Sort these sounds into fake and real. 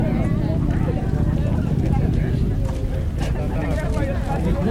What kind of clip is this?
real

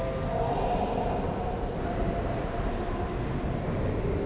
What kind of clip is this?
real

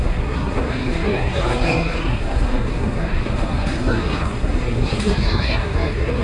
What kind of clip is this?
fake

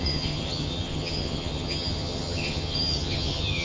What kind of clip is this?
fake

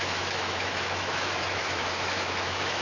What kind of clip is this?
fake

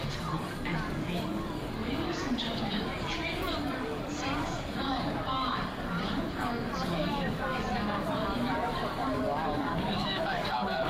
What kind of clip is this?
fake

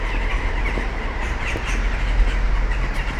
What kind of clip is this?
real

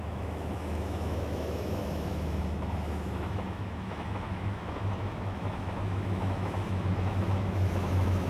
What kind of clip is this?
fake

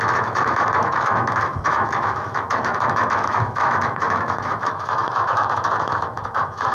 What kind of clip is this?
fake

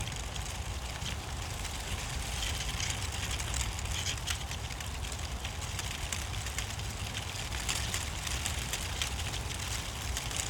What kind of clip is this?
real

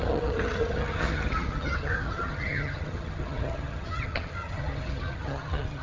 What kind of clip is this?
fake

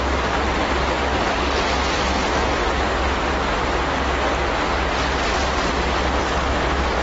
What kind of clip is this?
real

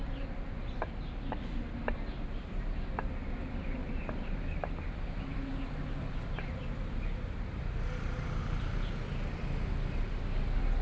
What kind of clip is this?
real